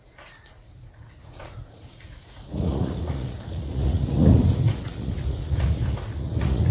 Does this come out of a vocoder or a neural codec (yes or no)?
yes